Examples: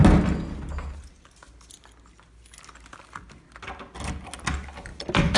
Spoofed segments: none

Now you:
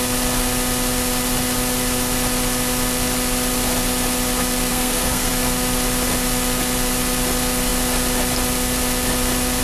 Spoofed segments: 4.7-5.3

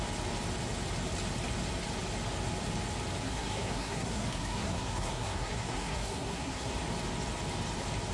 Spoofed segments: 3.2-6.7

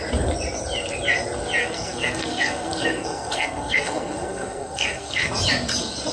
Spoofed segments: 1.6-5.3

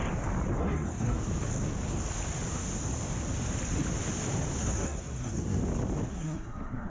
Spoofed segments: 0.6-1.2; 4.6-5.6; 6.1-6.9

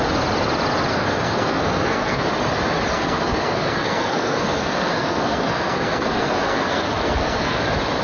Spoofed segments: 0.9-2.3; 2.9-7.6